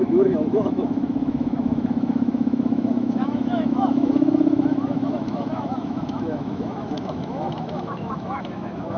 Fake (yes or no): yes